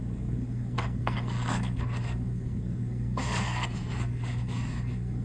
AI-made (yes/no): yes